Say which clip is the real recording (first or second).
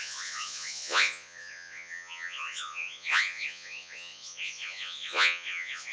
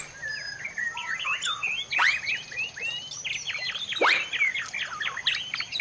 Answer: second